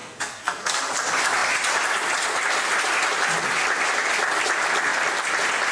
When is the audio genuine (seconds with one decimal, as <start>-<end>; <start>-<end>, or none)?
0.9-5.7